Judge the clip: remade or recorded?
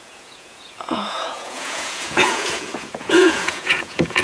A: remade